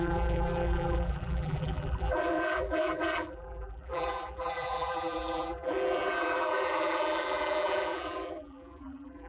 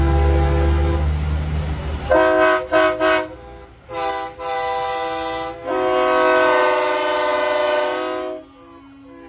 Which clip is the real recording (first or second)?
second